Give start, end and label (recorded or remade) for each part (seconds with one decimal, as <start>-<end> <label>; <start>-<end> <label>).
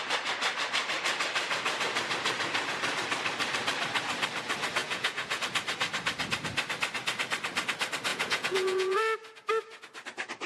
0.0-4.8 recorded; 4.8-5.4 remade; 5.4-8.1 recorded; 8.1-9.0 remade; 9.0-10.5 recorded